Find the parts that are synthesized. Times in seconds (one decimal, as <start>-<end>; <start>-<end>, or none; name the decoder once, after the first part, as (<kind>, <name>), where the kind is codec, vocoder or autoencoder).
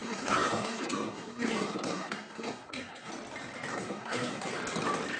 0.0-3.1 (codec, SNAC); 3.7-4.5